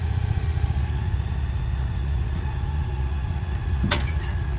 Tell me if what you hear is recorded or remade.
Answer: remade